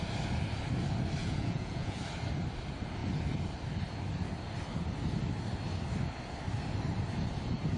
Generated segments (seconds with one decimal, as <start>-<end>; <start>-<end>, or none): 1.2-2.0